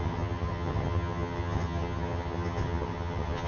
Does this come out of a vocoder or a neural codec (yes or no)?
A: yes